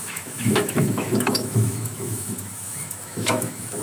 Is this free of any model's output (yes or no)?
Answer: no